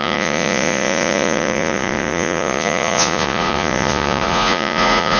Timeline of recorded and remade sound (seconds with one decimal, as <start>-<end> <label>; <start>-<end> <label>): 0.0-5.2 remade